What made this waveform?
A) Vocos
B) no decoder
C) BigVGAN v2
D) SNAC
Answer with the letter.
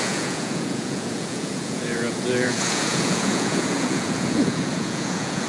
A